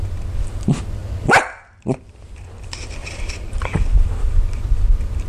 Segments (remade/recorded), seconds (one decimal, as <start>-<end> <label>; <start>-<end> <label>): 0.0-3.0 recorded; 3.0-3.5 remade; 3.5-5.3 recorded